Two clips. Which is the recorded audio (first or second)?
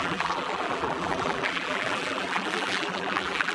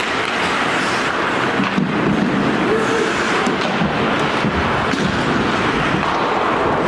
second